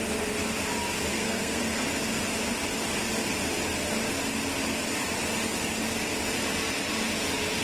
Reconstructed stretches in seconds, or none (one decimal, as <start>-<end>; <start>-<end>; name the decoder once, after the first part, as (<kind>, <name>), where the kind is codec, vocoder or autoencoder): 1.1-1.6 (codec, SNAC)